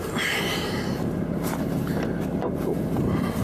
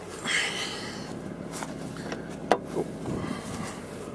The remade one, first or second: first